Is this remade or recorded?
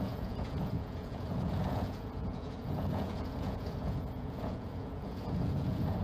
remade